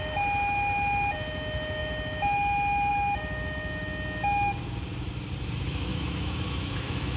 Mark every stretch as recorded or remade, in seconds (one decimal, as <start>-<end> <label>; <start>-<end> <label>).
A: 0.0-5.9 recorded; 5.9-7.2 remade